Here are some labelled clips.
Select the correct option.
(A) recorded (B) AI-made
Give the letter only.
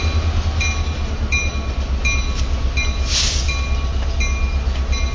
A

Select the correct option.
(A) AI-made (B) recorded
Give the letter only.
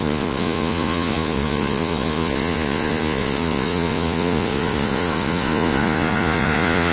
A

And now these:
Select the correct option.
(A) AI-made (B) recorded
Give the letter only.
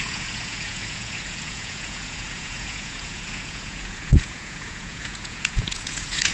A